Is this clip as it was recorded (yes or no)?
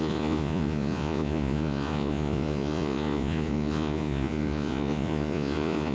no